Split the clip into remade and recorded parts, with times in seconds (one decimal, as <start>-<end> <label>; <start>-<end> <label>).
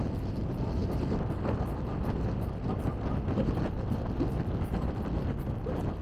0.0-6.0 recorded